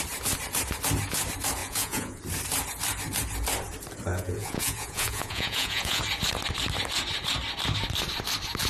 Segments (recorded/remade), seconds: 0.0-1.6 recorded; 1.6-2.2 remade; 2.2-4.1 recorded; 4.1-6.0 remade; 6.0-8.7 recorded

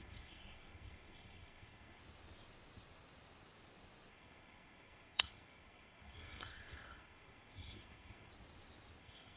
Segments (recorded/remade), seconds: 0.0-2.0 remade; 2.0-4.1 recorded; 4.1-8.3 remade; 8.3-9.0 recorded; 9.0-9.4 remade

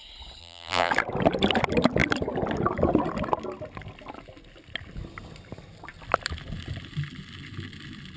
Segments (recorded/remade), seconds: 0.0-0.4 recorded; 0.4-0.9 remade; 0.9-8.2 recorded

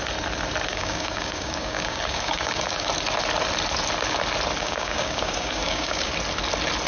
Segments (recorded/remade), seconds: 0.0-0.7 recorded; 0.7-2.9 remade; 2.9-4.6 recorded; 4.6-6.1 remade; 6.1-6.9 recorded

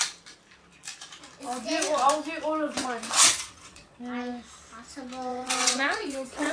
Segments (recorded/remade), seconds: 0.0-2.8 recorded; 2.8-4.0 remade; 4.0-5.3 recorded; 5.3-6.5 remade

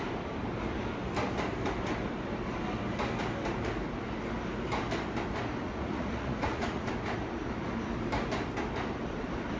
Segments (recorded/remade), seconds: 0.0-5.6 recorded; 5.6-6.9 remade; 6.9-9.6 recorded